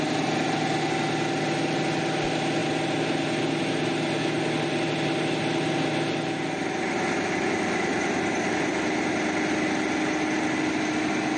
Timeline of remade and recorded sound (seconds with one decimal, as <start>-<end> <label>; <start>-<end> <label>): 0.0-11.4 recorded